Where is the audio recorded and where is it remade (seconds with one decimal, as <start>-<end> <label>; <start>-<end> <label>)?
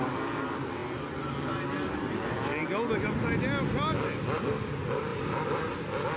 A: 0.0-6.2 recorded